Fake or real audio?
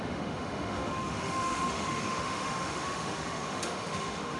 fake